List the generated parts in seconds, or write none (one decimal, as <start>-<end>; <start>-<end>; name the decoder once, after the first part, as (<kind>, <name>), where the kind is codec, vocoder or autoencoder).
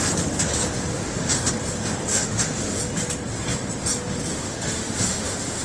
0.9-1.5 (autoencoder, DAC-VAE); 2.1-2.8; 4.3-5.6